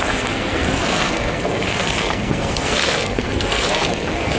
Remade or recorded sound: remade